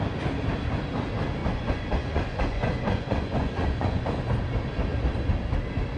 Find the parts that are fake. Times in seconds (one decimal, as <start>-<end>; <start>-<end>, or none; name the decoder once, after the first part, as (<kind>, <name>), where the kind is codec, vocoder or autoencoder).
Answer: 1.4-4.2 (vocoder, Vocos)